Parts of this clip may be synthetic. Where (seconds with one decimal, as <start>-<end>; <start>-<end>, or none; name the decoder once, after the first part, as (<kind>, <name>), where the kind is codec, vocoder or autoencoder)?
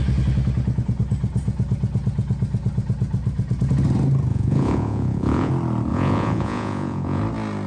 4.3-5.5 (vocoder, Vocos); 5.9-7.2